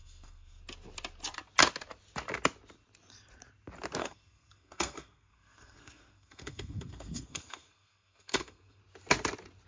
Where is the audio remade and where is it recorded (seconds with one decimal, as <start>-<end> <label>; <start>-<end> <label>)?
0.0-0.6 remade; 0.6-4.0 recorded; 4.0-8.8 remade; 8.8-9.7 recorded